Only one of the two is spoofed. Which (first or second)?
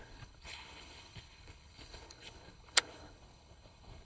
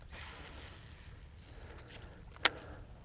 first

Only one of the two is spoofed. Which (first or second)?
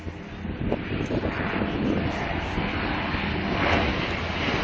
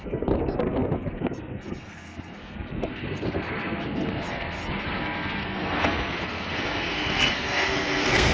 second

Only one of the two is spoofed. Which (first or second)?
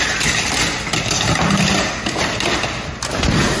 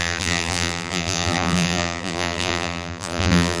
second